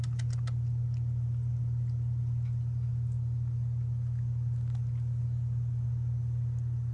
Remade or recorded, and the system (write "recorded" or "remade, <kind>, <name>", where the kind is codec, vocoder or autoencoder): recorded